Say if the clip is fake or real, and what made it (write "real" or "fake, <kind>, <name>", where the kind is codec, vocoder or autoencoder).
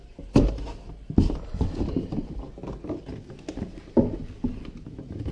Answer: real